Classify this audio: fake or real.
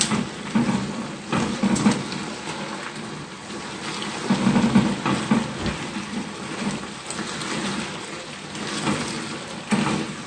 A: real